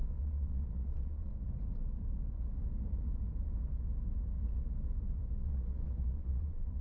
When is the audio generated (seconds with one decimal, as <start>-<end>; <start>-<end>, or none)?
0.0-1.3; 5.4-6.8